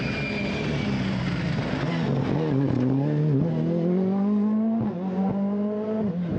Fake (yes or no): no